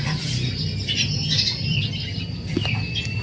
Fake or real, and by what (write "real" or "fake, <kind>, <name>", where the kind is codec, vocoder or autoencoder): real